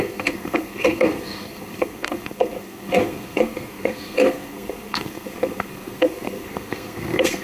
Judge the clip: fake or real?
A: fake